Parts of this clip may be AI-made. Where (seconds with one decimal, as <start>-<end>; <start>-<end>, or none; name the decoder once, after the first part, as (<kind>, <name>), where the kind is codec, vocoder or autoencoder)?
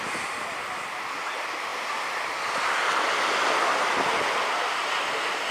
none